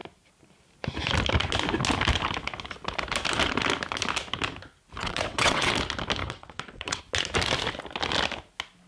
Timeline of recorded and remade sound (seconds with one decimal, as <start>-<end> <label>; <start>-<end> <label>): 0.0-5.0 recorded; 5.0-5.7 remade; 5.7-6.2 recorded; 6.2-7.0 remade; 7.0-8.9 recorded